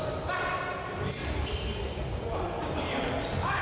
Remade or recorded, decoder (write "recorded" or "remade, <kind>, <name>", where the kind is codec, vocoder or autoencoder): recorded